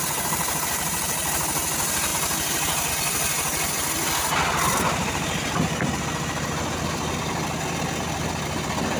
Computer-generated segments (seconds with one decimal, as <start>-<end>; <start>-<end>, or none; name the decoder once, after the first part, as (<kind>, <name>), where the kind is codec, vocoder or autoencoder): none